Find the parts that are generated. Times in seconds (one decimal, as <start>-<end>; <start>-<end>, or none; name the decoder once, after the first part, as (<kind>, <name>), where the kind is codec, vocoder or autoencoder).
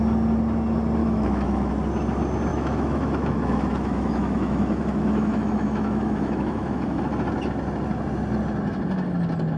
1.0-1.7 (autoencoder, DAC-VAE); 2.5-7.0